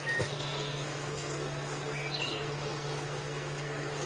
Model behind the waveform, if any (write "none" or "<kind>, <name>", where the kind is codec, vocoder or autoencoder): codec, SNAC